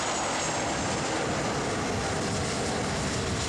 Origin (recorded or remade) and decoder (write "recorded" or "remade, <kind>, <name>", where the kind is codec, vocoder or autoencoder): recorded